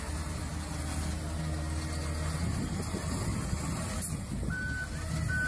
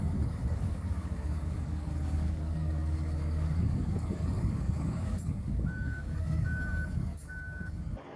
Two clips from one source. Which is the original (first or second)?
first